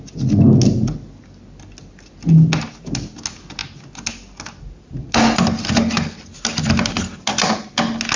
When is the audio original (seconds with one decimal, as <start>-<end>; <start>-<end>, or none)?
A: 0.0-8.2